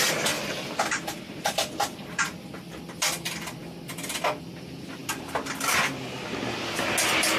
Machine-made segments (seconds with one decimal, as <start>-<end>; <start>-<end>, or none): 0.0-3.6; 4.5-5.0